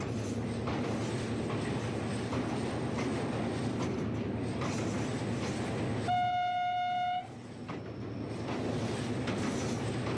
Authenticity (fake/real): real